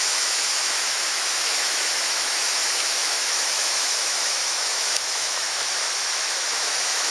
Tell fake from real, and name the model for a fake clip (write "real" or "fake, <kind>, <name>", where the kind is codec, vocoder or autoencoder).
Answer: fake, autoencoder, DAC-VAE